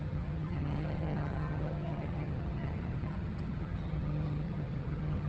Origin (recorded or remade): remade